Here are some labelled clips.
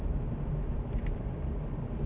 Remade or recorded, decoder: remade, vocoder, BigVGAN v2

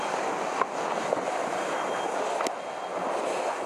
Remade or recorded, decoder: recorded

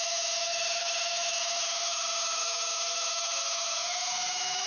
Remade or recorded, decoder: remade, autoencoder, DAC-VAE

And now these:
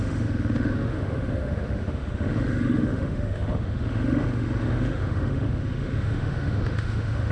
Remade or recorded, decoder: remade, autoencoder, DAC-VAE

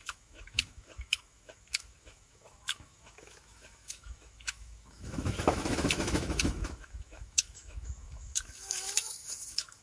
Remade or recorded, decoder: remade, autoencoder, DAC-VAE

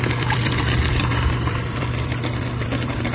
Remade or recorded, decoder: remade, vocoder, BigVGAN v2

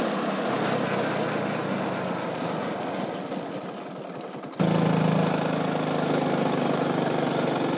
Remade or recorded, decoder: recorded